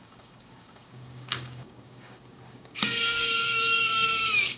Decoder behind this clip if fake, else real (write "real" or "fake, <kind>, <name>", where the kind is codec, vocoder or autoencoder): fake, codec, DAC